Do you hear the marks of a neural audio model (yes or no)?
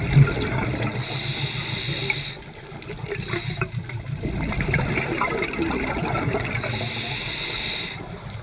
no